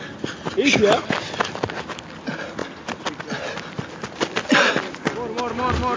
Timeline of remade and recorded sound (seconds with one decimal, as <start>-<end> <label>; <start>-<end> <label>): 0.0-6.0 recorded